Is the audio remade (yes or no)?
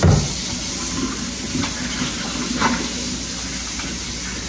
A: no